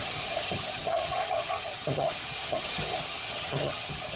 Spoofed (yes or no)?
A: yes